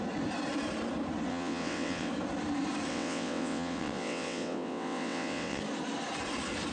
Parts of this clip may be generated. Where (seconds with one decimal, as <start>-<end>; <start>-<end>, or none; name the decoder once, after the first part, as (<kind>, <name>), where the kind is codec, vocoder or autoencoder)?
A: 1.3-2.1 (vocoder, WaveNeXt); 2.9-5.6